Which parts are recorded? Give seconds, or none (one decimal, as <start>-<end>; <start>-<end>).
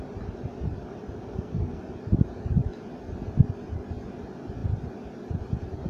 0.0-1.2; 1.8-5.9